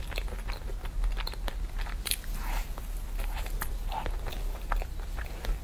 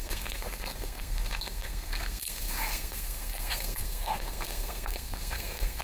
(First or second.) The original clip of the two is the first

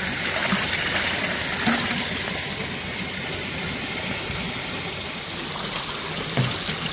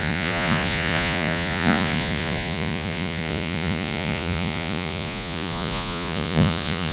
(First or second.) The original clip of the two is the first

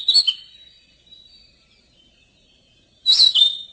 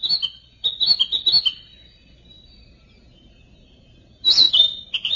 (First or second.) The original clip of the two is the second